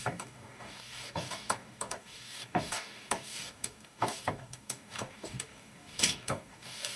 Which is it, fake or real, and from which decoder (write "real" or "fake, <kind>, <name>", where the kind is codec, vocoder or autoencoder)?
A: fake, codec, DAC